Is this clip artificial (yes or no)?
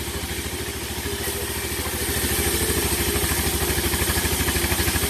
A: no